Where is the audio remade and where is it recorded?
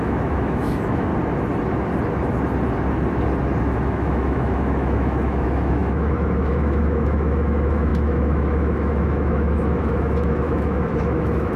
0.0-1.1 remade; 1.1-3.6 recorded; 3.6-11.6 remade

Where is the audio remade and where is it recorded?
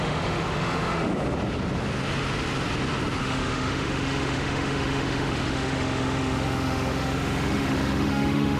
0.0-1.1 remade; 1.1-3.2 recorded; 3.2-8.6 remade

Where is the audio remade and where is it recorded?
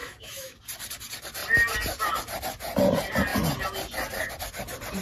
0.0-0.6 remade; 0.6-5.0 recorded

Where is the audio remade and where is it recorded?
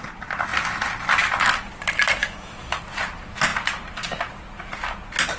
0.0-2.2 recorded; 2.2-2.8 remade; 2.8-5.4 recorded